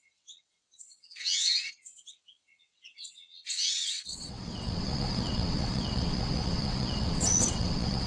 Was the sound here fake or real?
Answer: fake